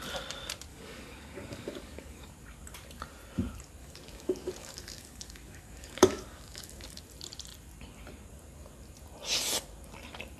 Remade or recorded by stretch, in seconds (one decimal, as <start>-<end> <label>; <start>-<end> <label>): 0.0-0.7 recorded; 0.7-2.3 remade; 2.3-3.8 recorded; 3.8-7.0 remade; 7.0-10.4 recorded